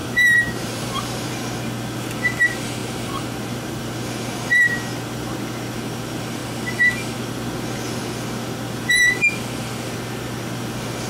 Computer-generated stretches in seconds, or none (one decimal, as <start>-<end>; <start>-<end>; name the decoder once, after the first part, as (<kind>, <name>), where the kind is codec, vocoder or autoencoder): 0.0-1.3 (vocoder, BigVGAN v2); 2.8-3.8